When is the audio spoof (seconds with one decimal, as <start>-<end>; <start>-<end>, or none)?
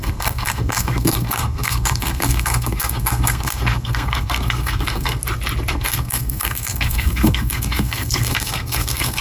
0.0-5.2; 5.7-9.2